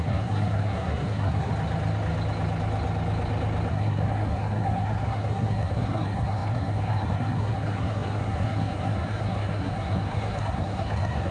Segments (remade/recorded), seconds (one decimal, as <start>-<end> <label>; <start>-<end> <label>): 0.0-1.5 remade; 1.5-3.7 recorded; 3.7-11.3 remade